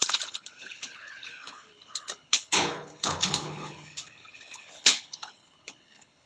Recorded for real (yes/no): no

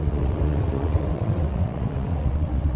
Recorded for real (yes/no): no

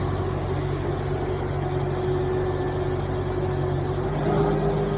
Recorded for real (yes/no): yes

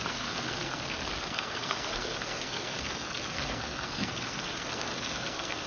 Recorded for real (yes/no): no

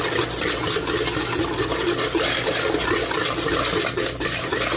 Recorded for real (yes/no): yes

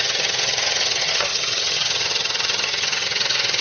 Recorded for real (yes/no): no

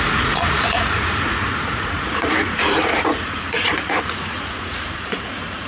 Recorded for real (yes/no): no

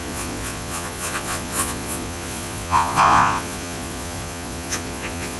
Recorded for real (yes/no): no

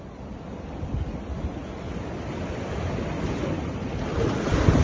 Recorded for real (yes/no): yes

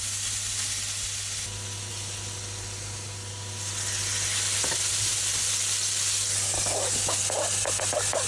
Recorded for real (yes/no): yes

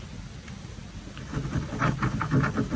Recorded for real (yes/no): yes